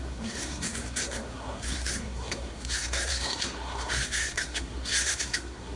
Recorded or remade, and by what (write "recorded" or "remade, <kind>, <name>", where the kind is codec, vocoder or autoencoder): remade, codec, SNAC